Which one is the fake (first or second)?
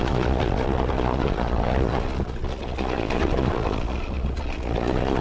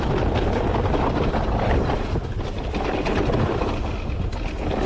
first